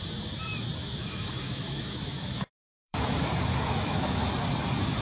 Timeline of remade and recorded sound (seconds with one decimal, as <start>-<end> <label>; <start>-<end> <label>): 0.0-0.8 recorded; 0.8-3.0 remade; 3.0-3.5 recorded; 3.5-4.3 remade; 4.3-5.0 recorded